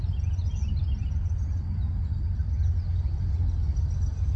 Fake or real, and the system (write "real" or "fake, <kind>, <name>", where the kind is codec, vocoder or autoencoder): real